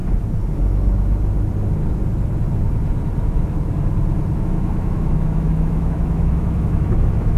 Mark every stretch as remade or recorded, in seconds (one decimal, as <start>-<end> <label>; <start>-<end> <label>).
0.0-4.4 recorded; 4.4-7.4 remade